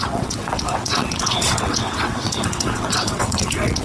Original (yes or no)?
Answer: no